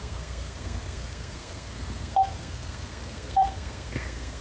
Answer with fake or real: fake